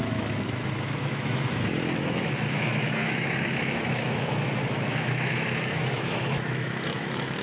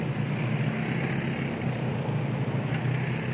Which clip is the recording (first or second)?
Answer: second